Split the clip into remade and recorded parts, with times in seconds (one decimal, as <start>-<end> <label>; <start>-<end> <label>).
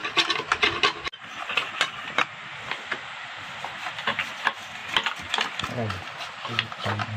0.0-4.8 recorded; 4.8-5.6 remade; 5.6-7.2 recorded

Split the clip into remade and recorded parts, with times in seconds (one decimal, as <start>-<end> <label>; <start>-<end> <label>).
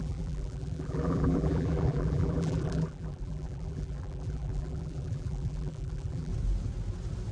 0.0-6.3 remade; 6.3-7.3 recorded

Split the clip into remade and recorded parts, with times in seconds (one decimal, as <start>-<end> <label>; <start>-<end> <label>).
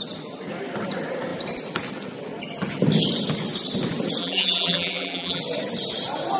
0.0-4.2 recorded; 4.2-5.4 remade; 5.4-6.4 recorded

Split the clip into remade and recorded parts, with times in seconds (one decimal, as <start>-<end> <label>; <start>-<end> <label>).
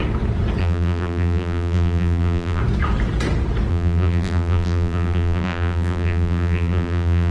0.0-0.6 recorded; 0.6-2.6 remade; 2.6-3.7 recorded; 3.7-7.3 remade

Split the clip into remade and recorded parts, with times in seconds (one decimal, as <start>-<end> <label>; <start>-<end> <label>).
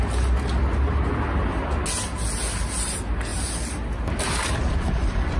0.0-3.3 recorded; 3.3-5.4 remade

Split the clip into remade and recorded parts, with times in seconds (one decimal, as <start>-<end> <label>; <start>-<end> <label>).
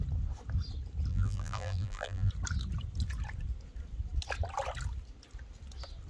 0.0-1.1 recorded; 1.1-2.3 remade; 2.3-6.1 recorded